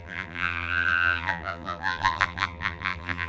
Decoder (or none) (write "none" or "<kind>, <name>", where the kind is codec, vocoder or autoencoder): vocoder, BigVGAN v2